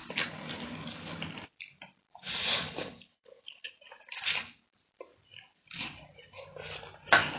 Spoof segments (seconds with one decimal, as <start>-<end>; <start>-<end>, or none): 2.4-3.7